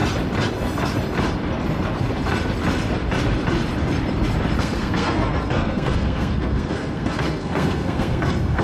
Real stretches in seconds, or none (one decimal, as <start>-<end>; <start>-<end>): 0.0-4.6